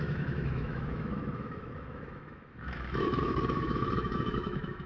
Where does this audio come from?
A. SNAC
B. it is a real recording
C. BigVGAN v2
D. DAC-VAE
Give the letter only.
D